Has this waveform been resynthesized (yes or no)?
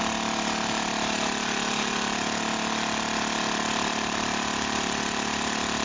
no